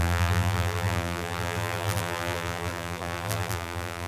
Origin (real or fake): fake